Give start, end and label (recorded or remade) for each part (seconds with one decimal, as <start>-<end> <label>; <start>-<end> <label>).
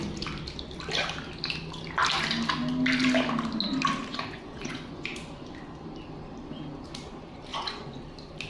0.0-4.1 recorded; 4.1-5.4 remade; 5.4-7.5 recorded; 7.5-8.0 remade; 8.0-8.5 recorded